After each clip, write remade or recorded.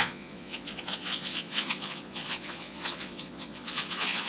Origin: remade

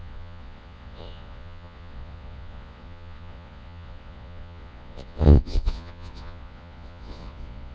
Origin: remade